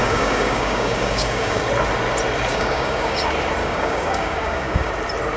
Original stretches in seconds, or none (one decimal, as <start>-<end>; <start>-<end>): 1.6-2.5; 3.2-3.6; 4.9-5.4